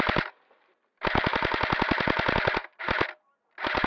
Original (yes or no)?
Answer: yes